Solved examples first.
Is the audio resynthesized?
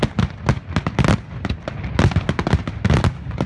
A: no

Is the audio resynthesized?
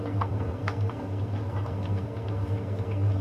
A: yes